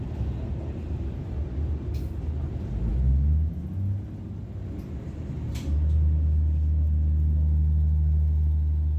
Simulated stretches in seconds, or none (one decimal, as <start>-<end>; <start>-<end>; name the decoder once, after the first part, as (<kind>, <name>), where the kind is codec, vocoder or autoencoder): none